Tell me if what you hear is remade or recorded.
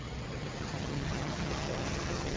remade